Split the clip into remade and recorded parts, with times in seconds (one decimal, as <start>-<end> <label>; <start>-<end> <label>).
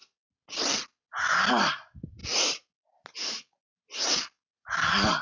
0.0-5.2 recorded